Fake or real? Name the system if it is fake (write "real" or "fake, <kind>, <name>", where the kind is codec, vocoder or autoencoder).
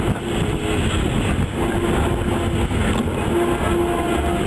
real